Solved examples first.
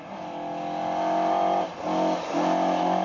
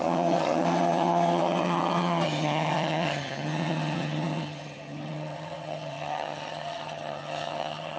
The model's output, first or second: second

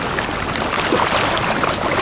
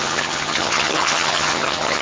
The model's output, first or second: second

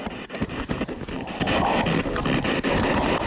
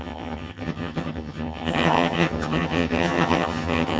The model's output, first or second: second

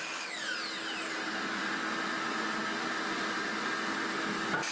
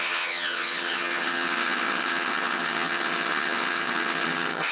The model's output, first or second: second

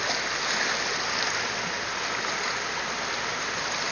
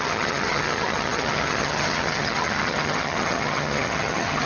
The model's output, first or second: second